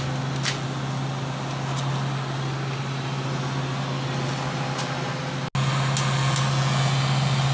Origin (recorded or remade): recorded